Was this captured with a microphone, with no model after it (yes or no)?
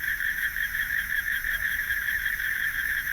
no